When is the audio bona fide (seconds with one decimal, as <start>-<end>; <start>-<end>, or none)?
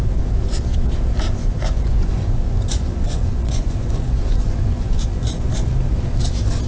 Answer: 0.0-1.4; 5.4-6.7